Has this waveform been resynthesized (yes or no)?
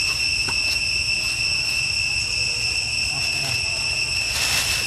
no